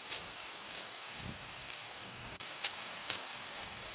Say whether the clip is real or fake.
fake